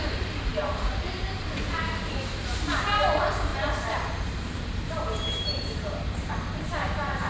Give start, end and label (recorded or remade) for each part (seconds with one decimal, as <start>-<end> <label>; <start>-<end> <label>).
0.0-7.3 remade